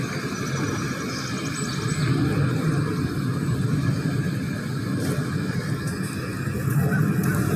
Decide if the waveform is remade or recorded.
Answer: recorded